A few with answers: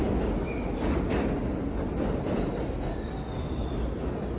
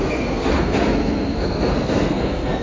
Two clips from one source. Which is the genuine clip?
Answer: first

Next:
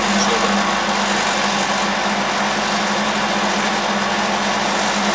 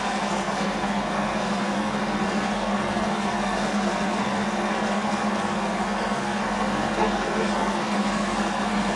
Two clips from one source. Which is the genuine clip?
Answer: first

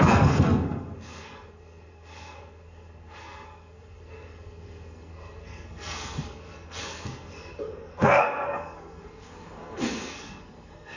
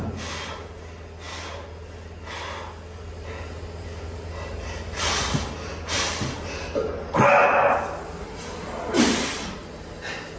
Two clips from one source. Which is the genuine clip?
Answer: second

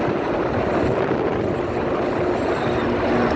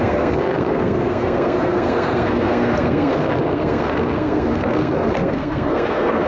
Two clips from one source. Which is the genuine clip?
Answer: first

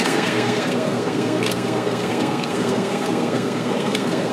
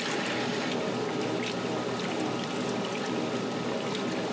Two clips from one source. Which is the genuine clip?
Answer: second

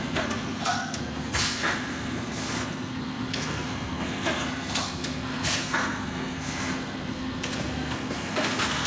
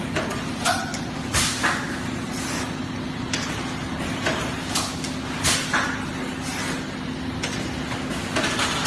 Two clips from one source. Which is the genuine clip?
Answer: second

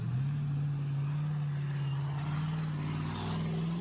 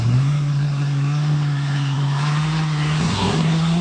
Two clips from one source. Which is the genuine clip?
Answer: first